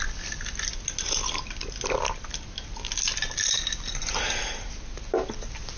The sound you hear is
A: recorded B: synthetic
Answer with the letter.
A